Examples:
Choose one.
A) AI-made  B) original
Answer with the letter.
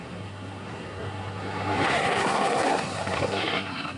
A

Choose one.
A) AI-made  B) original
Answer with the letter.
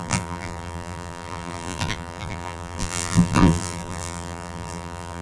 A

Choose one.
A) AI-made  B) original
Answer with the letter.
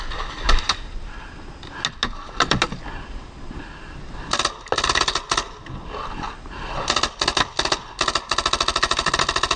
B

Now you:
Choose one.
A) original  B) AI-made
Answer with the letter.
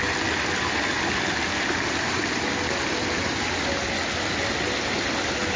A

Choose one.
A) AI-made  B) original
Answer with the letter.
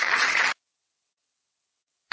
A